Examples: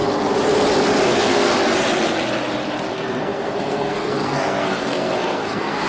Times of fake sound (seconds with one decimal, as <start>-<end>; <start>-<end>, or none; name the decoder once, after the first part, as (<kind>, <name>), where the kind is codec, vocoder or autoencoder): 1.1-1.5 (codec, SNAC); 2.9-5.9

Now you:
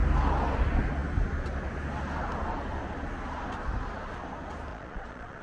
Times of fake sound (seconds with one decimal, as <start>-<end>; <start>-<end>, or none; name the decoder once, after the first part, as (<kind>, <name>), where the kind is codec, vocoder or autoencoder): 4.7-5.4 (vocoder, Vocos)

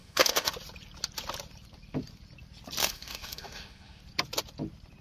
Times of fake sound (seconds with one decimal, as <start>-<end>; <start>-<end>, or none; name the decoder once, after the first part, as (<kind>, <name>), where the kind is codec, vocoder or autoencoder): 0.0-0.5 (autoencoder, DAC-VAE); 2.8-4.0

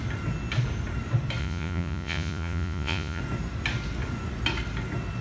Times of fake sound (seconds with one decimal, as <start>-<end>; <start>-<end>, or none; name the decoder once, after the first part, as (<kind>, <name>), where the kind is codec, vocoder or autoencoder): 1.4-3.2 (vocoder, Vocos)

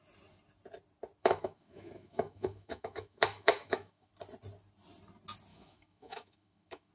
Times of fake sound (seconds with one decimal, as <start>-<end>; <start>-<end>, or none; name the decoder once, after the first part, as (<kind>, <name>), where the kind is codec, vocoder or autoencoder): 1.2-4.1 (autoencoder, DAC-VAE); 5.5-6.9

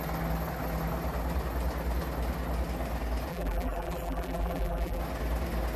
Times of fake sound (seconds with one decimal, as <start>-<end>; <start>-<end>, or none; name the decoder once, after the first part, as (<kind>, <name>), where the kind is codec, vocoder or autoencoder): 3.3-5.0 (vocoder, BigVGAN v2)